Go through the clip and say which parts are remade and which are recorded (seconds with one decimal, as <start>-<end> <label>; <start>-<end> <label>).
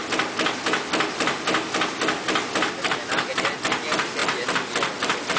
0.0-5.4 recorded